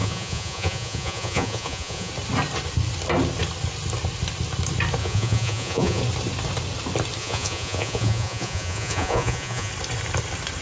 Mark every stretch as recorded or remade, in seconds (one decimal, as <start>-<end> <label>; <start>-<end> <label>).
0.0-2.1 remade; 2.1-5.0 recorded; 5.0-6.0 remade; 6.0-7.2 recorded; 7.2-9.7 remade; 9.7-10.6 recorded